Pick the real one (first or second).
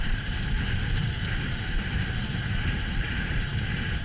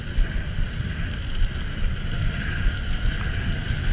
second